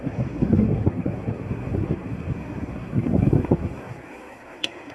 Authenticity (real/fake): fake